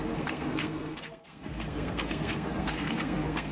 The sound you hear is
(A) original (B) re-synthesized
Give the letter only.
B